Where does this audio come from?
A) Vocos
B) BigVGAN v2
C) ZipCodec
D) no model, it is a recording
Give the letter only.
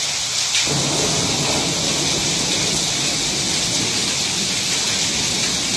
D